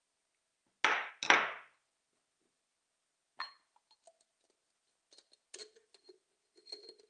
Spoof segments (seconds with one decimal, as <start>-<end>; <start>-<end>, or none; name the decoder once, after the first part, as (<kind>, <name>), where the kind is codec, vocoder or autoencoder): none